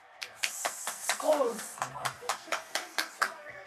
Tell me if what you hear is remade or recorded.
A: remade